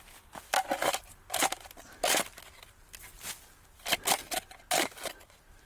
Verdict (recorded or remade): recorded